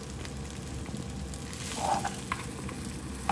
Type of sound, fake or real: real